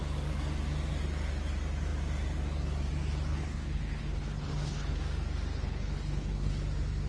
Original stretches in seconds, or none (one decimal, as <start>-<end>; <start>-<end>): 0.0-3.3; 5.0-5.5; 6.5-7.1